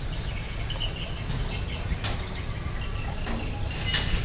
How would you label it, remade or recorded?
recorded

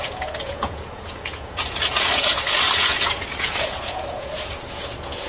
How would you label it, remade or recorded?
remade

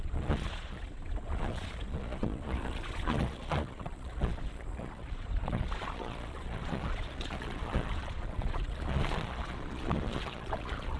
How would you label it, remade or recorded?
remade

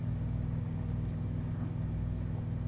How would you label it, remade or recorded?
recorded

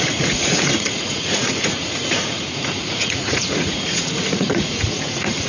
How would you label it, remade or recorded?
remade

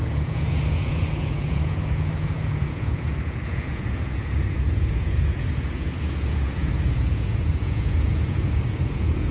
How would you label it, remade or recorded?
remade